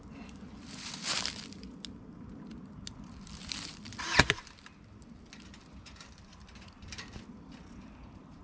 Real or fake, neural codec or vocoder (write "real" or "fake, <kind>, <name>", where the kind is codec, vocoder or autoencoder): real